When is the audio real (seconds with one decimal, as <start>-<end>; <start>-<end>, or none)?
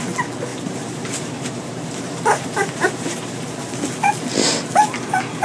0.0-0.5; 3.7-5.4